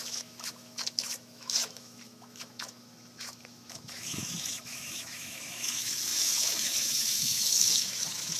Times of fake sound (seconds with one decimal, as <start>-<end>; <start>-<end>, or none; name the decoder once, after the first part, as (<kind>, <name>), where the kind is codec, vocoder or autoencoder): 0.0-8.4 (autoencoder, DAC-VAE)